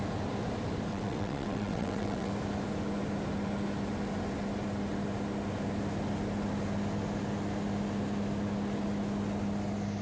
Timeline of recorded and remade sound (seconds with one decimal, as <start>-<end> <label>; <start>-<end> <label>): 0.0-0.9 recorded; 0.9-2.3 remade; 2.3-10.0 recorded

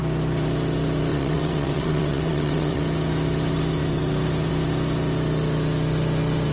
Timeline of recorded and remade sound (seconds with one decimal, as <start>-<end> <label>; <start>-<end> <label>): 0.0-1.1 recorded; 1.1-2.8 remade; 2.8-6.5 recorded

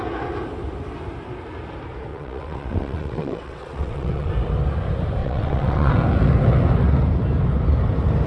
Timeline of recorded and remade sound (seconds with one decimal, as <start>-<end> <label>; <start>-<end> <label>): 0.0-2.1 recorded; 2.1-4.3 remade; 4.3-5.2 recorded; 5.2-5.9 remade; 5.9-8.3 recorded

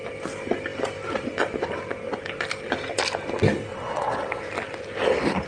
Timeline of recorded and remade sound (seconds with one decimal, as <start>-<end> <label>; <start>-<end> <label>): 0.0-3.7 recorded; 3.7-4.4 remade; 4.4-5.5 recorded